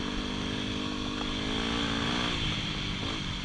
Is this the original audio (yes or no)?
yes